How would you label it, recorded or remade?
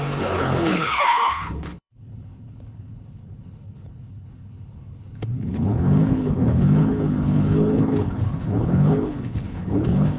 remade